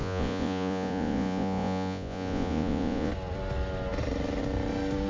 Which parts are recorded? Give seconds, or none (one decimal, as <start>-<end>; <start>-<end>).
3.1-5.1